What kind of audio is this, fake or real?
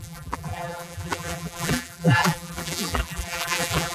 fake